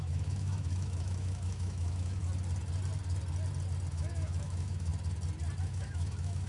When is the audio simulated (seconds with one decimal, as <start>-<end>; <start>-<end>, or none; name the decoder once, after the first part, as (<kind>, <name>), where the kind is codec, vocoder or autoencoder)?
0.0-2.2 (autoencoder, DAC-VAE); 3.9-4.9; 5.6-6.5